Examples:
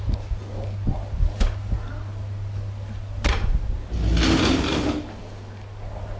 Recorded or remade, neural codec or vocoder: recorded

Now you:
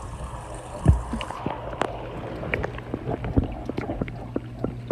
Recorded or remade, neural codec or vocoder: recorded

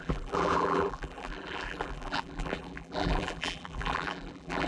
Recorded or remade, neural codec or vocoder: remade, vocoder, BigVGAN v2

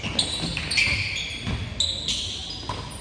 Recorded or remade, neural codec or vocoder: recorded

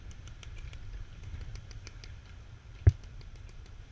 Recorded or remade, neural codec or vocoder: remade, vocoder, BigVGAN v2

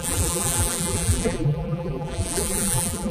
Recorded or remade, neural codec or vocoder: remade, vocoder, BigVGAN v2